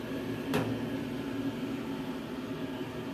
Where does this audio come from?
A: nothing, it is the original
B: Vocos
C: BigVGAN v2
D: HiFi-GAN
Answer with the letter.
A